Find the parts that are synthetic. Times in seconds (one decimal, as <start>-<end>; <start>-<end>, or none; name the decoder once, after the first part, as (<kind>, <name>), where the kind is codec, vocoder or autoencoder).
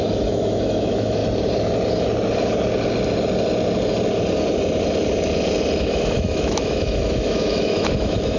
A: 0.0-1.2 (autoencoder, DAC-VAE); 5.8-8.4